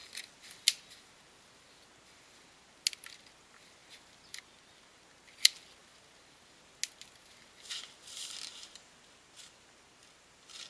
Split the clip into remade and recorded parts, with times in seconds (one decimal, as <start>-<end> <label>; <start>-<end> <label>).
0.0-10.7 recorded